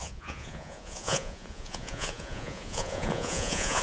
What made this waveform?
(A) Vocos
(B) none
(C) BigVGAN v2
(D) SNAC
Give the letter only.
A